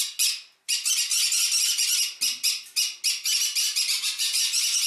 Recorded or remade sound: recorded